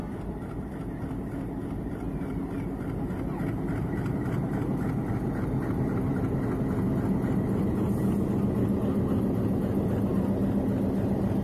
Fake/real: real